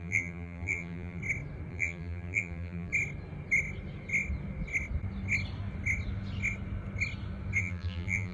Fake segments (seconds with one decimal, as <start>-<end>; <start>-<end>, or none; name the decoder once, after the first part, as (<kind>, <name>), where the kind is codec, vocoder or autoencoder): 0.0-1.2 (vocoder, BigVGAN v2); 1.7-2.9; 7.6-8.3